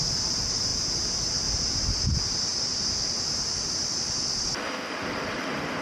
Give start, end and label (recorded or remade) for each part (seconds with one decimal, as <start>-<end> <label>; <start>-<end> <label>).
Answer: 0.0-5.8 recorded